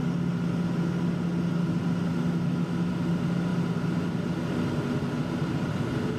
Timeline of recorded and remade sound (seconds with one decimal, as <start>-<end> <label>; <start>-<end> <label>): 0.0-2.1 recorded; 2.1-2.9 remade; 2.9-6.2 recorded